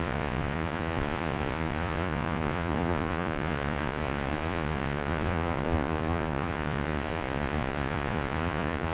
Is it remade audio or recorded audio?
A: remade